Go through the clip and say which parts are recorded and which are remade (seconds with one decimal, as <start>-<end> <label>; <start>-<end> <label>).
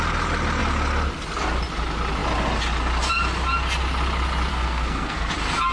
0.0-4.5 recorded; 4.5-5.3 remade; 5.3-5.7 recorded